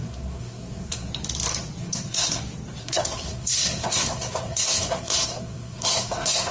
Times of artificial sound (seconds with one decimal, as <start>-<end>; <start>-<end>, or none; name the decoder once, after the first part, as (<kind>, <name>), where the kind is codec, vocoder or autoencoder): 0.0-1.1 (codec, SNAC); 1.8-2.4; 2.8-6.5